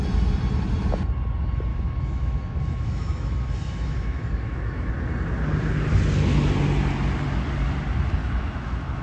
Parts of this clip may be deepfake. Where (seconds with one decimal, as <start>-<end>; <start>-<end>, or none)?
1.7-4.9; 8.2-9.0